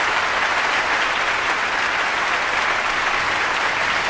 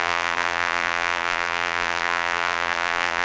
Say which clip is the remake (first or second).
second